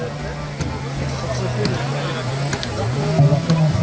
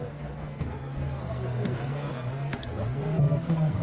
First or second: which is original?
first